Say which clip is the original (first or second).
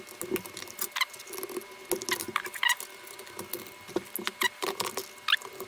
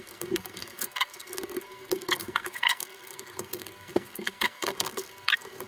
first